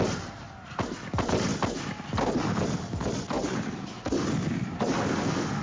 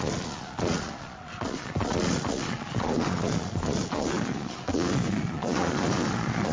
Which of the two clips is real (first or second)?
first